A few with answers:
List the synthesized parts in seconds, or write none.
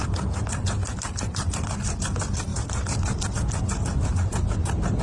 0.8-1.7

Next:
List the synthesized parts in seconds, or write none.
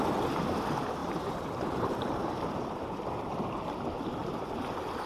1.0-3.8; 4.2-5.1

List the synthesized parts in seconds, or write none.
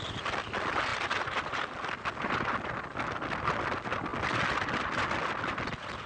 0.9-1.9